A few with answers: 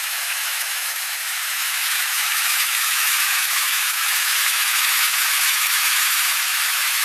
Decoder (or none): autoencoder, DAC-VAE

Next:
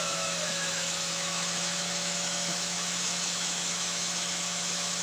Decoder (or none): autoencoder, DAC-VAE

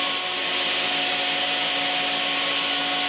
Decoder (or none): none